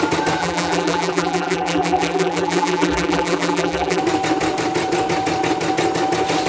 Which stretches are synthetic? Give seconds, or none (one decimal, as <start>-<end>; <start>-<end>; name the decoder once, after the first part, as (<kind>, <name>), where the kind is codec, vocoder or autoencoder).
0.4-4.0 (vocoder, BigVGAN v2)